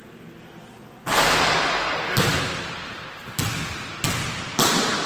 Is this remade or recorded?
recorded